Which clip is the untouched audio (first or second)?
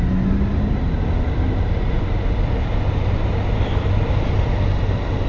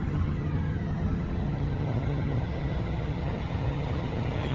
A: first